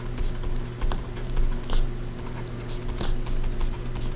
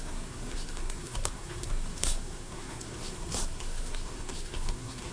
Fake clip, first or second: second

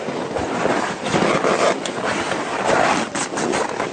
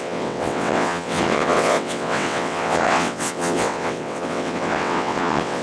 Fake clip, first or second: second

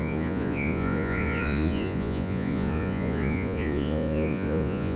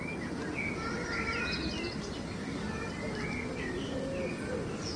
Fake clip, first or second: first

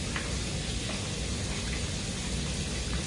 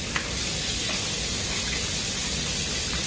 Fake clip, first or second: second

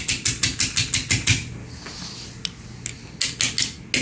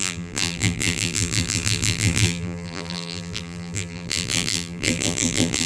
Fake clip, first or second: second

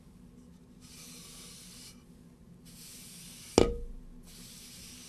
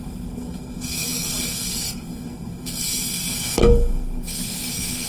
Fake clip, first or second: second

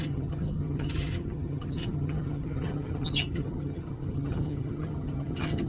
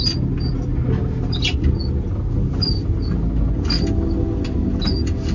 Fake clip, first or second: first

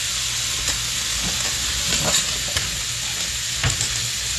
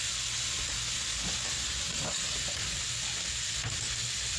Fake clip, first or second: second